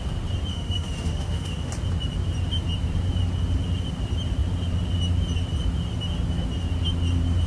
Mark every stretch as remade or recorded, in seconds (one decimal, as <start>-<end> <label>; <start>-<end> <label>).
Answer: 0.0-0.5 recorded; 0.5-1.7 remade; 1.7-7.5 recorded